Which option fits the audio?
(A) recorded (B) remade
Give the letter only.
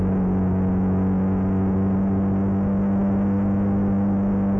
A